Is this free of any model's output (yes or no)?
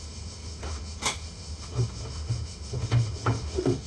no